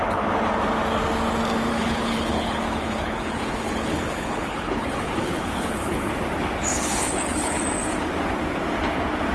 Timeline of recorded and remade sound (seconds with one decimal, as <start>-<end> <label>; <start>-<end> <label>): 0.0-1.7 recorded; 1.7-6.1 remade; 6.1-6.7 recorded; 6.7-7.6 remade; 7.6-9.3 recorded